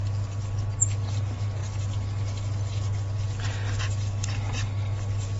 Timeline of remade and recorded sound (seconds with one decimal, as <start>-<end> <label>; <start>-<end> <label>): 0.0-5.4 recorded

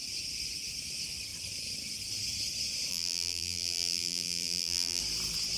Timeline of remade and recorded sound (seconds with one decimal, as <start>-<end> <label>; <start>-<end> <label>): 0.0-2.9 recorded; 2.9-5.0 remade; 5.0-5.6 recorded

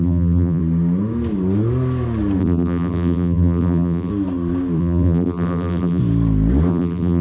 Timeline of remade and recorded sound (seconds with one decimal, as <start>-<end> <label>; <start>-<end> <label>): 0.0-0.6 remade; 0.6-2.4 recorded; 2.4-4.1 remade; 4.1-4.8 recorded; 4.8-6.0 remade; 6.0-6.7 recorded; 6.7-7.2 remade

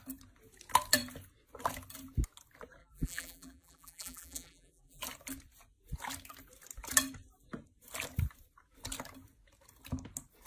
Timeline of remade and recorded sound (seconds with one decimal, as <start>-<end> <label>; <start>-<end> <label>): 0.0-2.8 recorded; 2.8-5.0 remade; 5.0-10.5 recorded

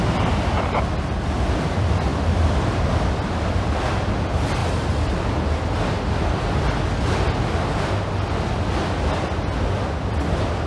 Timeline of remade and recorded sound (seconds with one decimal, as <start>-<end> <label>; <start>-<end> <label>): 0.0-10.7 recorded

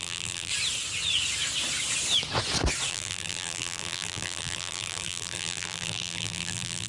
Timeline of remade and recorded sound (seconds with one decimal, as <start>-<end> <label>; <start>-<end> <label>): 0.0-0.5 remade; 0.5-2.9 recorded; 2.9-6.9 remade